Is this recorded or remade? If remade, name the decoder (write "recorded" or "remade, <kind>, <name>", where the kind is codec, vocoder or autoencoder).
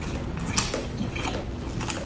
recorded